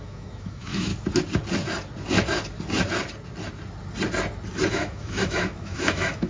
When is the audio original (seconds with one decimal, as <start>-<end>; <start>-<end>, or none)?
0.9-4.7